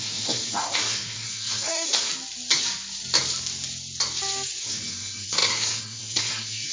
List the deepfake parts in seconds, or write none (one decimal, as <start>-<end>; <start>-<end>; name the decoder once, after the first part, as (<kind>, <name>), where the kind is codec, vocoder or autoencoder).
0.0-2.1 (codec, SNAC); 4.6-6.7